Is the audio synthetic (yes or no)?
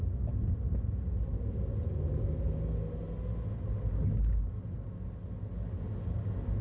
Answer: no